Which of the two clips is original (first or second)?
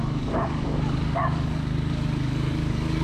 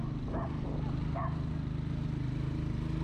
second